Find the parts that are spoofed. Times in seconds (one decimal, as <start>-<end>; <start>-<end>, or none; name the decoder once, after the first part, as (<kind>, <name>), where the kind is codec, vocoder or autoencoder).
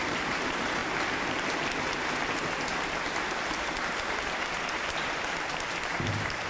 0.0-0.8 (vocoder, BigVGAN v2); 4.7-6.5